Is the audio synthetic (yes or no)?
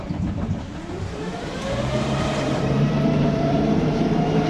yes